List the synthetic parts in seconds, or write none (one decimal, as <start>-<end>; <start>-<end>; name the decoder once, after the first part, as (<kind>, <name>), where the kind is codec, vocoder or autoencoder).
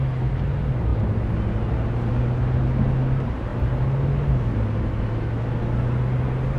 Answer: none